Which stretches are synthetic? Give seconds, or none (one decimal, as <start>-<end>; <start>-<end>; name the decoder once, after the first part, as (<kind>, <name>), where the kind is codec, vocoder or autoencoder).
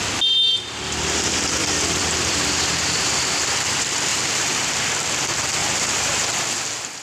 1.6-3.2 (vocoder, BigVGAN v2); 4.1-4.7; 5.6-6.3